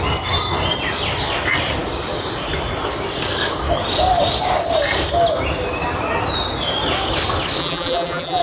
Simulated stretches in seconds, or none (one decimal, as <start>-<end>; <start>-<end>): 7.6-8.4